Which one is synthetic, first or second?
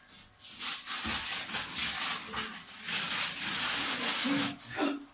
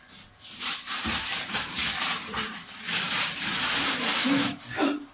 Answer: second